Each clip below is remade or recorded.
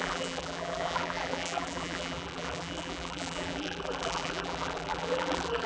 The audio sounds remade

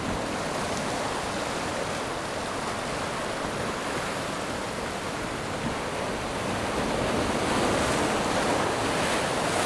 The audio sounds recorded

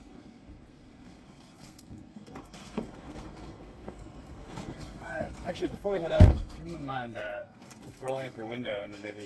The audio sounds remade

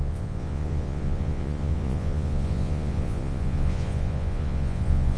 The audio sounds remade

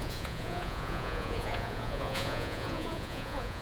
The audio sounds remade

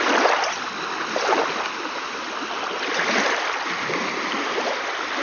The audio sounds recorded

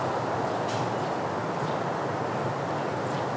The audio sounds recorded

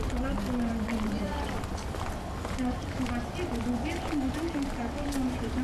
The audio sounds recorded